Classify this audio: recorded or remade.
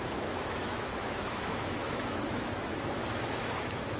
remade